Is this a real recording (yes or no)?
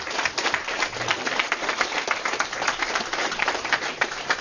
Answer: no